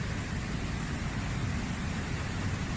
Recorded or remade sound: recorded